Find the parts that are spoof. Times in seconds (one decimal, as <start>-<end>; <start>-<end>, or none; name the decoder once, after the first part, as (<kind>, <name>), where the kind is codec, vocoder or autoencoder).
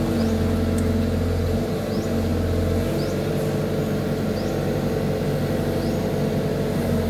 none